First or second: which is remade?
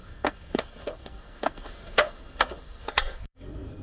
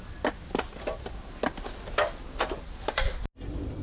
first